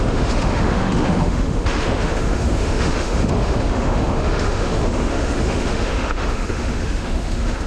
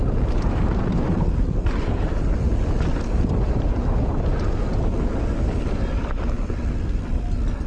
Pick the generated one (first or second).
first